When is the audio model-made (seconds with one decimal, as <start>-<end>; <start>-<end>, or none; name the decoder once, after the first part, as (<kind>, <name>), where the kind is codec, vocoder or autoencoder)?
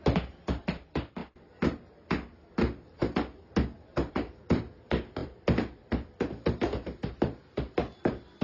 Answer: 0.0-1.2 (vocoder, BigVGAN v2); 4.1-8.4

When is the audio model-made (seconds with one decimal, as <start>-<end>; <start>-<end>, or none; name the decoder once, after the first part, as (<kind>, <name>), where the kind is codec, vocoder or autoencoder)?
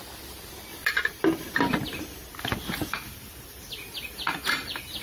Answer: 0.7-3.7 (vocoder, BigVGAN v2)